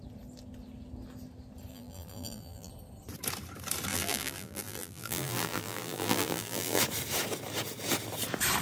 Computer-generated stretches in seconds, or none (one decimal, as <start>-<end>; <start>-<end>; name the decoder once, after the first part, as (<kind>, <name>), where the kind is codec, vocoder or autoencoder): 1.7-2.7 (vocoder, BigVGAN v2); 3.9-6.8